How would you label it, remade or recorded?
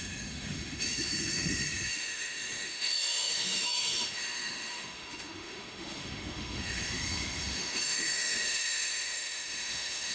remade